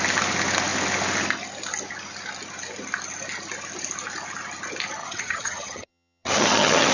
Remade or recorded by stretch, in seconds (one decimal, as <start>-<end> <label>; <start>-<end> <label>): 0.0-5.0 recorded; 5.0-6.9 remade